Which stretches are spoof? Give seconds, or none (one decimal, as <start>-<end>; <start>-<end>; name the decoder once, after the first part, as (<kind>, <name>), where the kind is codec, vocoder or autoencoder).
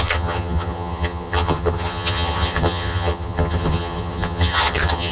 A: 0.0-5.1 (vocoder, HiFi-GAN)